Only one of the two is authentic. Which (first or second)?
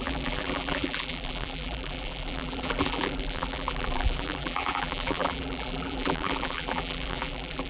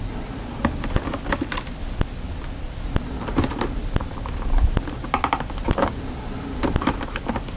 second